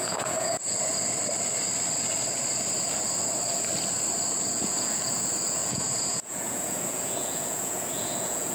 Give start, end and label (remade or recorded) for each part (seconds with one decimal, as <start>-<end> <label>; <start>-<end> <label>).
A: 0.0-0.9 remade; 0.9-4.5 recorded; 4.5-8.5 remade